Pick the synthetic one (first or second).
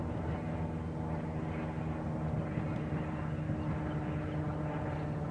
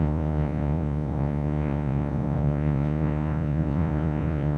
second